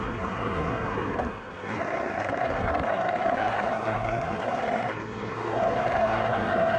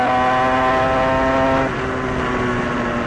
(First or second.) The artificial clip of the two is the first